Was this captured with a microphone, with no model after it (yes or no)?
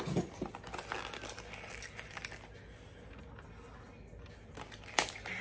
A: yes